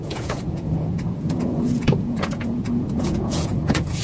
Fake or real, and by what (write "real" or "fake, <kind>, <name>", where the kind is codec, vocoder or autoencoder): fake, vocoder, Vocos